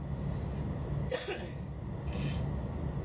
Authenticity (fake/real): real